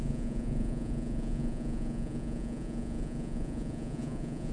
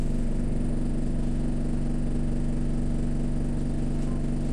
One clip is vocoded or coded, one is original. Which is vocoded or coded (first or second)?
first